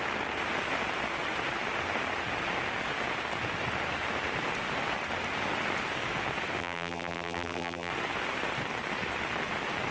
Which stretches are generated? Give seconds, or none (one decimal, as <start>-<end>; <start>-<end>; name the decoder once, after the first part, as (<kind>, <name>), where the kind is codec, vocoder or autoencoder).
6.6-7.9 (vocoder, BigVGAN v2)